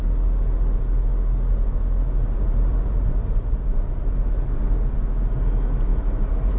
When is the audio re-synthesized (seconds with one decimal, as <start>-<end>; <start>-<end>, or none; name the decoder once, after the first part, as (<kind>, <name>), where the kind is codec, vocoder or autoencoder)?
2.2-4.0 (vocoder, BigVGAN v2); 5.9-6.6